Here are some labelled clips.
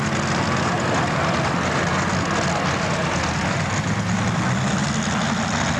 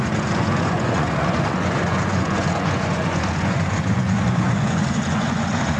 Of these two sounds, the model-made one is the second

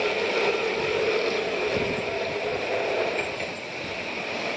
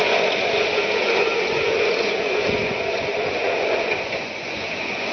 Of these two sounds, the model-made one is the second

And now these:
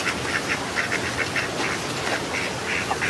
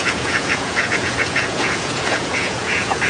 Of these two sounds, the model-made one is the second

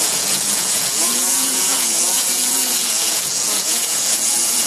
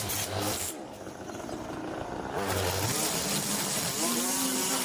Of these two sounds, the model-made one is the first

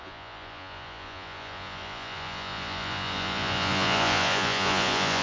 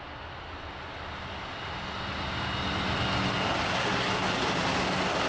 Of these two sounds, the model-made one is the first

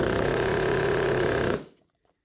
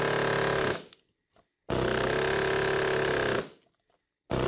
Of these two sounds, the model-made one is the first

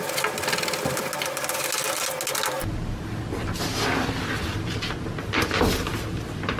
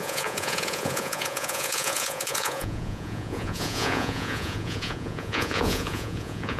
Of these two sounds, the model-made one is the second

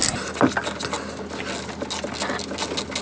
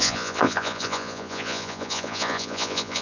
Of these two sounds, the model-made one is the second